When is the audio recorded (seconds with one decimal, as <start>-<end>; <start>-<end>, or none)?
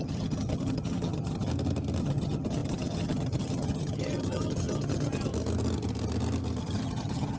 1.5-2.0; 5.3-6.6